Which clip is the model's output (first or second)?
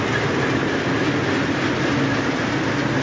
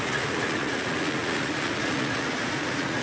second